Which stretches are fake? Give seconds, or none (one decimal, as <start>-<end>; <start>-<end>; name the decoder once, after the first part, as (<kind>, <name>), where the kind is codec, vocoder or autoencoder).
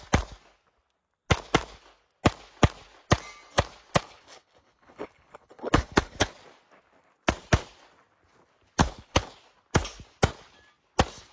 4.0-6.3 (codec, HILCodec); 8.8-9.3